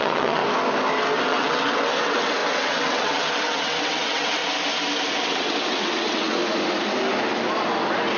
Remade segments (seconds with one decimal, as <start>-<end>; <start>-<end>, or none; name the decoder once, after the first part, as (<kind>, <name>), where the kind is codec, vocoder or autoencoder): 0.0-0.4 (vocoder, WaveNeXt); 1.2-4.4; 5.1-6.4